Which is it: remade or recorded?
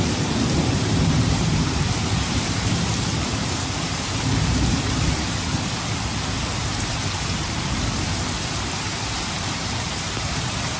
remade